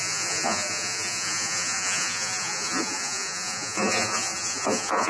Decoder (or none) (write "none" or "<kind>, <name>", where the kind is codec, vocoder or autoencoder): vocoder, Vocos